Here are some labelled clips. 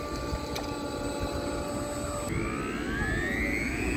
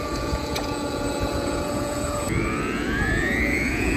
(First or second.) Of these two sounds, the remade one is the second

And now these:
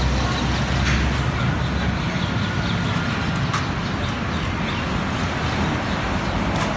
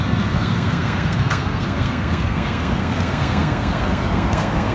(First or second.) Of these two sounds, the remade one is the second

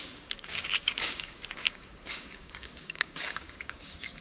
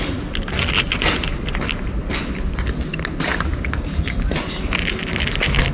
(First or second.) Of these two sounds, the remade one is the first